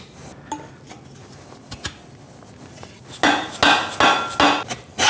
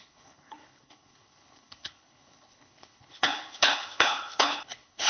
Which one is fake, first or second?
second